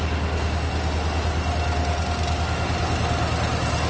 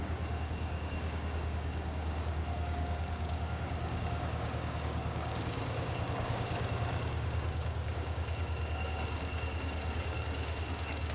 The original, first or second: first